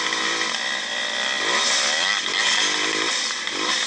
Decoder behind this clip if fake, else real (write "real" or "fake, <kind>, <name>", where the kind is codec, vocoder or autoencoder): real